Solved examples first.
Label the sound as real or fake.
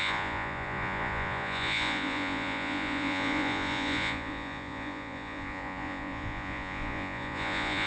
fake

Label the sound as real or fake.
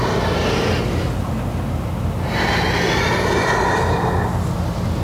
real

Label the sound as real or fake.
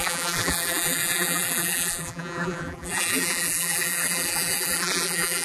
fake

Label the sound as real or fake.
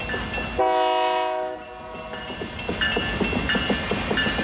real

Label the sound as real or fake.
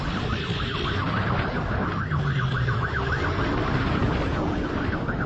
fake